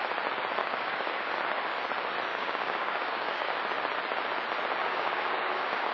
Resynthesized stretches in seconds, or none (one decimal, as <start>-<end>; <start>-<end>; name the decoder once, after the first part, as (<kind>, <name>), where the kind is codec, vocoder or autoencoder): 0.6-1.3 (codec, DAC); 2.3-3.6; 4.8-5.9